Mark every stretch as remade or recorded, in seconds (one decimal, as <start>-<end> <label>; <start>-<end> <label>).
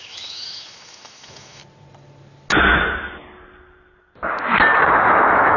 0.0-1.6 remade; 1.6-5.0 recorded; 5.0-5.6 remade